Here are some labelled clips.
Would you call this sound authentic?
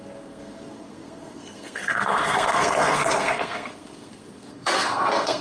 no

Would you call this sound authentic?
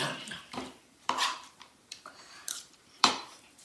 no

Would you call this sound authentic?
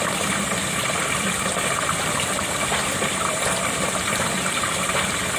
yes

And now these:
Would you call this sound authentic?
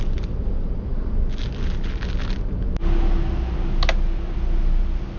yes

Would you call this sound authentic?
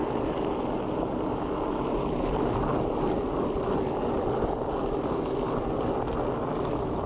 yes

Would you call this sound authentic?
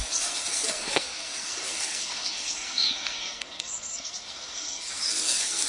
no